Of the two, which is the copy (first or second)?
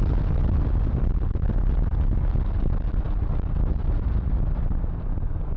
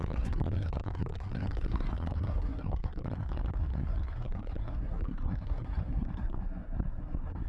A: second